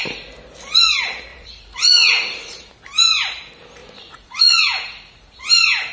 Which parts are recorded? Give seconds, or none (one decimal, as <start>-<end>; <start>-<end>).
0.0-1.3; 2.7-3.8; 5.4-5.9